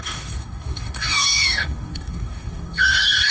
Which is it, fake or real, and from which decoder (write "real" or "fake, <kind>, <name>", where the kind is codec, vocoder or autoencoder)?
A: fake, codec, DAC